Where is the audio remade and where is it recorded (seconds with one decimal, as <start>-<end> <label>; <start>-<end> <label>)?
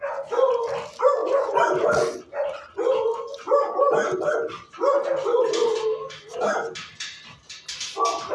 0.0-8.3 recorded